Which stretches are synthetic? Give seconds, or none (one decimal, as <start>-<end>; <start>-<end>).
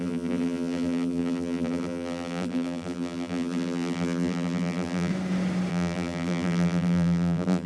0.0-5.1; 5.7-7.7